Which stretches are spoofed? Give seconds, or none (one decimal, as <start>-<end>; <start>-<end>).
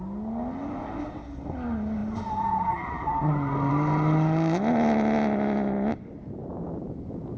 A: none